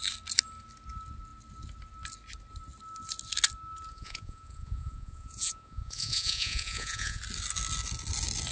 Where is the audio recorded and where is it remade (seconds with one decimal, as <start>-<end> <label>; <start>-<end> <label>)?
0.0-3.9 recorded; 3.9-7.2 remade; 7.2-8.5 recorded